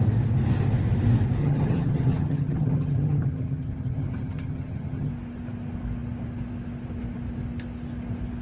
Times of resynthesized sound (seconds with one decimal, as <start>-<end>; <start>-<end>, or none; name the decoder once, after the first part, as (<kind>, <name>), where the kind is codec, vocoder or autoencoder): 1.4-5.1 (vocoder, HiFi-GAN)